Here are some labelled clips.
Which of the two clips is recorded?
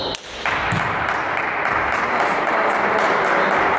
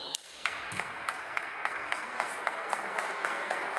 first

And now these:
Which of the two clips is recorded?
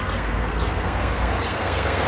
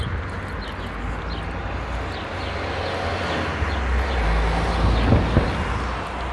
second